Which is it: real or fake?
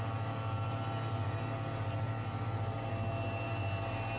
real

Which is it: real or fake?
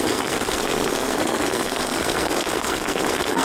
fake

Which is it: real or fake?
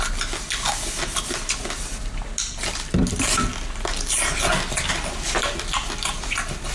real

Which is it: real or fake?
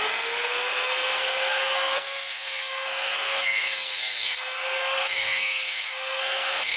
fake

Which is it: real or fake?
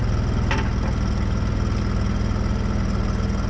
real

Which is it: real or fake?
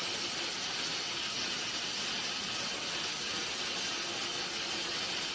real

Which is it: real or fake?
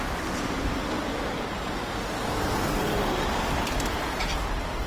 real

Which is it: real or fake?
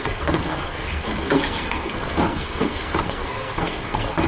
fake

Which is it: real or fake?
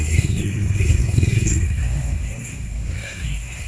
fake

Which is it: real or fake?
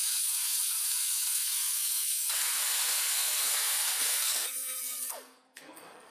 fake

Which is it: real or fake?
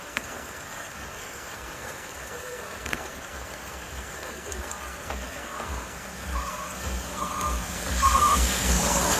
fake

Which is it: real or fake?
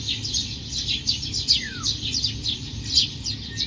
real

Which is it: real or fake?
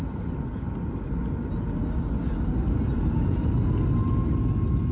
real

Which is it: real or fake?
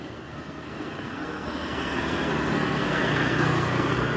fake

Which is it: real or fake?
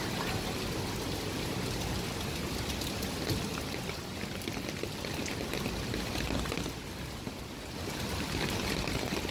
real